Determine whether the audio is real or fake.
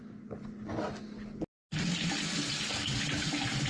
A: real